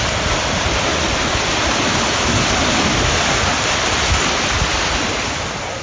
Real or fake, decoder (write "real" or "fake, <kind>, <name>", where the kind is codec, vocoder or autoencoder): real